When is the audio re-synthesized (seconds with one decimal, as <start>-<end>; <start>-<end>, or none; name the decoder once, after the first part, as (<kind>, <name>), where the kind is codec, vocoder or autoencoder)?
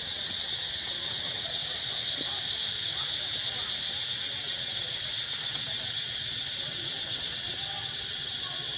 0.0-1.6 (vocoder, WaveNeXt); 4.2-8.8